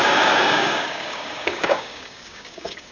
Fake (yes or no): yes